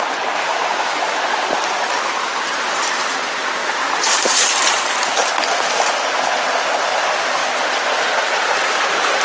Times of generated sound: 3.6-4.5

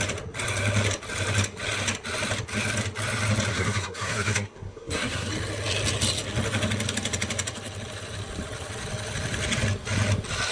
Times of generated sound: 3.5-5.3

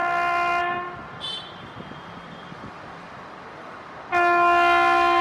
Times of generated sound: 0.0-0.6; 1.0-4.1

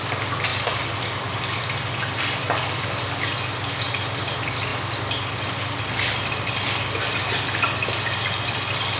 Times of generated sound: none

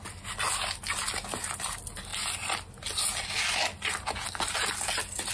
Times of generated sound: none